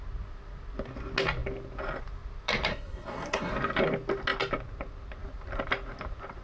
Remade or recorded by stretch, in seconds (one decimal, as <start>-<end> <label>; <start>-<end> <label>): 0.0-2.7 recorded; 2.7-3.5 remade; 3.5-6.4 recorded